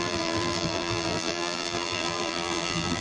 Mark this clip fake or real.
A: fake